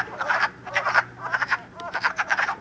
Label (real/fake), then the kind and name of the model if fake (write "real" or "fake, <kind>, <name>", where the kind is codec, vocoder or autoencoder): fake, vocoder, BigVGAN v2